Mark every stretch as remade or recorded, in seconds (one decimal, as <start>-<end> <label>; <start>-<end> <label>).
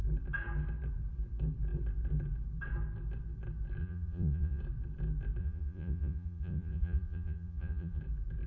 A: 0.0-3.8 recorded; 3.8-4.6 remade; 4.6-5.4 recorded; 5.4-8.0 remade; 8.0-8.5 recorded